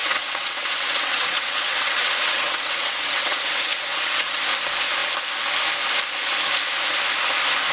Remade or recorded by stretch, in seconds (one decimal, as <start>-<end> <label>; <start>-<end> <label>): 0.0-4.4 remade; 4.4-7.7 recorded